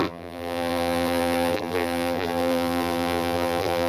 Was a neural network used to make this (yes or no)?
yes